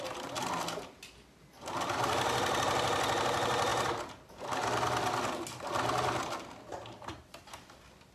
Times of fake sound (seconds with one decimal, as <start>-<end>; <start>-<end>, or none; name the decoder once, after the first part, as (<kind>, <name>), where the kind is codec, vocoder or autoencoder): none